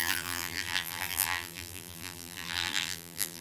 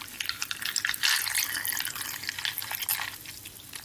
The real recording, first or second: second